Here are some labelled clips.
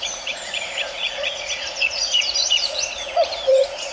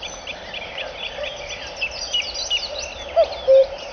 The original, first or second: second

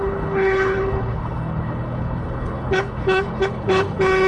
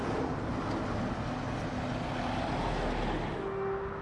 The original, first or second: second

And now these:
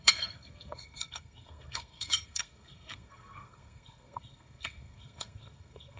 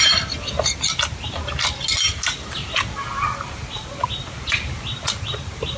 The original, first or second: second